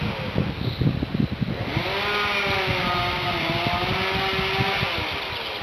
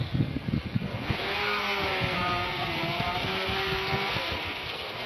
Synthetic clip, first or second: second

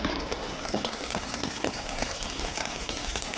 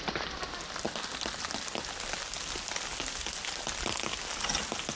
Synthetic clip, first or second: first